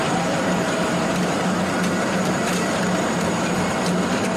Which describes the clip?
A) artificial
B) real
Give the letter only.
A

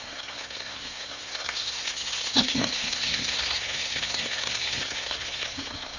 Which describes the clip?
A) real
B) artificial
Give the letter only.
B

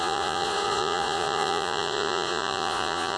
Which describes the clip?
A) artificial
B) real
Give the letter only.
A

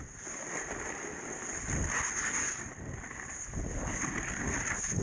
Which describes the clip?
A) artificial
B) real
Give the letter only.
B